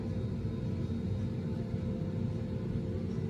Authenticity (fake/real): real